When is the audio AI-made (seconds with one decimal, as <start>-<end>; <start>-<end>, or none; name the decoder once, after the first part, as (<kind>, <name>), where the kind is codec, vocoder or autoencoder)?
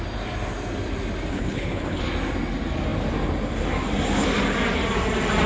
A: 1.3-2.0 (codec, HILCodec)